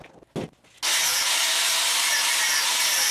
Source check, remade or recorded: recorded